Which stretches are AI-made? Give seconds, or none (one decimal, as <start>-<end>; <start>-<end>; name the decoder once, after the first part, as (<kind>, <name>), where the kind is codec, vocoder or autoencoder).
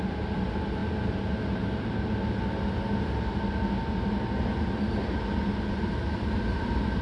none